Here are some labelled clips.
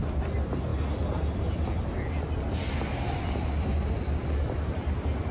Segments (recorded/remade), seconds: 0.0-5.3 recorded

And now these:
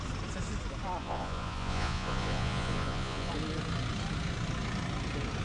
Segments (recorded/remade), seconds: 0.0-1.0 recorded; 1.0-3.3 remade; 3.3-5.4 recorded

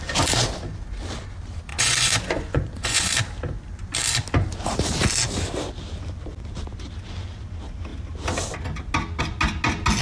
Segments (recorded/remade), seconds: 0.0-1.7 recorded; 1.7-3.1 remade; 3.1-10.0 recorded

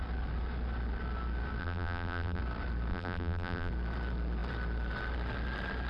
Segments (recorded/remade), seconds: 0.0-1.6 recorded; 1.6-2.4 remade; 2.4-2.9 recorded; 2.9-3.7 remade; 3.7-5.9 recorded

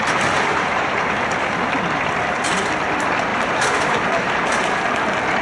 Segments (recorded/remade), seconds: 0.0-0.5 recorded; 0.5-1.2 remade; 1.2-3.3 recorded; 3.3-4.8 remade; 4.8-5.4 recorded

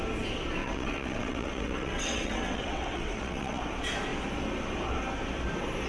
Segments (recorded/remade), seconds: 0.0-0.6 recorded; 0.6-3.6 remade; 3.6-5.9 recorded